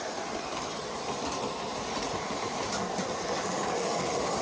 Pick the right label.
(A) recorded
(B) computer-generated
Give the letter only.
A